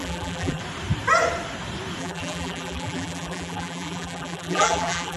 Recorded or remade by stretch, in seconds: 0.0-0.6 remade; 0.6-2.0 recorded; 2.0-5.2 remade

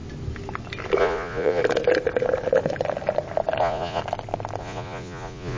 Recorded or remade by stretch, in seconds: 0.0-1.0 recorded; 1.0-1.6 remade; 1.6-3.6 recorded; 3.6-4.0 remade; 4.0-4.6 recorded; 4.6-5.6 remade

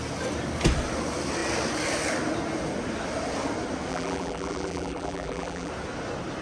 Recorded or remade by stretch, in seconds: 0.0-3.9 recorded; 3.9-5.7 remade; 5.7-6.4 recorded